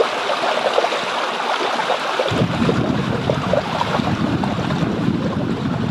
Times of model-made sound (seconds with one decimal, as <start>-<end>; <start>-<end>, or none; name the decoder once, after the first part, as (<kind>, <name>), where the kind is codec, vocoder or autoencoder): 1.8-4.4 (vocoder, BigVGAN v2)